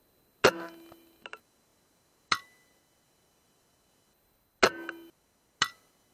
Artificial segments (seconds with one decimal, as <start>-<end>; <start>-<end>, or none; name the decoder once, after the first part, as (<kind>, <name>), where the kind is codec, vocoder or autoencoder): none